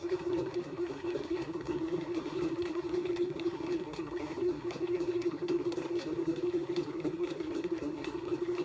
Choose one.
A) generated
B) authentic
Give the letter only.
A